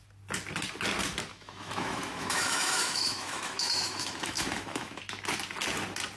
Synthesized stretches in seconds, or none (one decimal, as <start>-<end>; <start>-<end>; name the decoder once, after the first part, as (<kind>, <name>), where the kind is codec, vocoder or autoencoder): 1.3-5.0 (autoencoder, DAC-VAE)

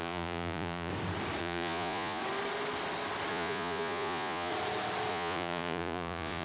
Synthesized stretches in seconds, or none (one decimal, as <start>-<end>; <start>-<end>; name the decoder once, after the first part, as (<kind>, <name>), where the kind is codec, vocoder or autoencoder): 0.0-0.9 (vocoder, Vocos); 1.4-2.2; 3.3-4.5; 5.1-6.4

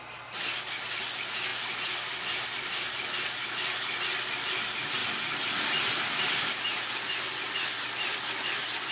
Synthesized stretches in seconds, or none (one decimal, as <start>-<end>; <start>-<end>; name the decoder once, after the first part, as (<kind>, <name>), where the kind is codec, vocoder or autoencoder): none

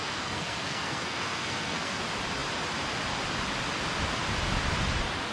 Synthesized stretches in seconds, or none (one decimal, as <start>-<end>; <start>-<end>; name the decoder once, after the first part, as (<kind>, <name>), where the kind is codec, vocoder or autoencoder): 0.0-2.0 (codec, SNAC)

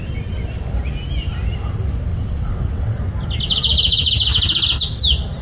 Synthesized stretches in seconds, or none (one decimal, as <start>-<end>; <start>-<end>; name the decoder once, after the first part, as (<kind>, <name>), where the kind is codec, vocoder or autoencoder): 2.1-3.0 (vocoder, WaveNeXt)